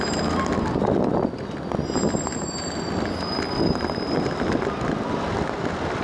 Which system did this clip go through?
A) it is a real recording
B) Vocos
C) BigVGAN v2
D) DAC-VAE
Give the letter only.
A